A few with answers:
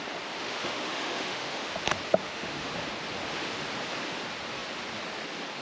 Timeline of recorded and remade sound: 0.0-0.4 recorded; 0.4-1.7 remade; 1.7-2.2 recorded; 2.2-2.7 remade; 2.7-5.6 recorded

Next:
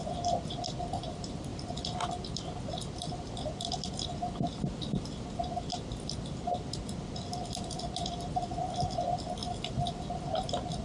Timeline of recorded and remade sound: 0.0-10.8 recorded

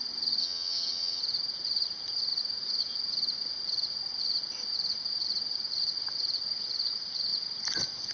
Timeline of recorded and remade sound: 0.0-0.4 recorded; 0.4-1.2 remade; 1.2-8.1 recorded

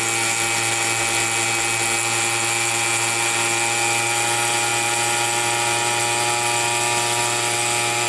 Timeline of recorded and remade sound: 0.0-8.1 recorded

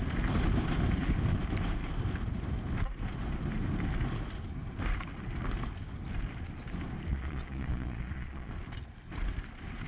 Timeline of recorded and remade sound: 0.0-7.1 recorded; 7.1-8.5 remade; 8.5-9.9 recorded

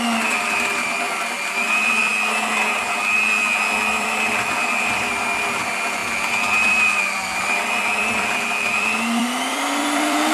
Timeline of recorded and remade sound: 0.0-2.1 remade; 2.1-3.9 recorded; 3.9-6.0 remade; 6.0-6.7 recorded; 6.7-10.3 remade

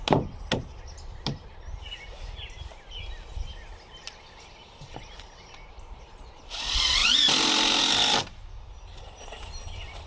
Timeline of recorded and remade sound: 0.0-10.1 recorded

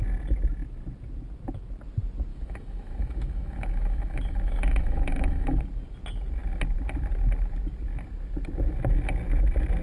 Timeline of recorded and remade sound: 0.0-2.3 recorded; 2.3-5.6 remade; 5.6-9.8 recorded